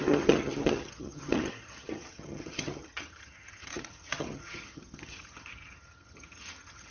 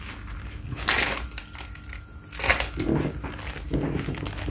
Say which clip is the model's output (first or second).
first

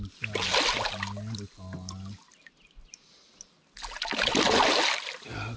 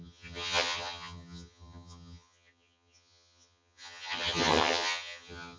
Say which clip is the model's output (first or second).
second